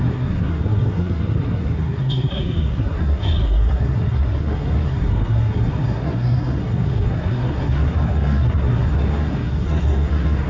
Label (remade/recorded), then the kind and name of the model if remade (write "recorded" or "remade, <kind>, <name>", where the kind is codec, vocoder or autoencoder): remade, codec, SNAC